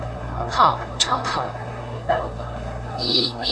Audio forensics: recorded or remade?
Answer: remade